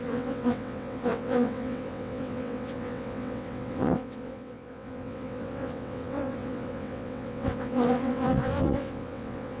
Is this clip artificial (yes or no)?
yes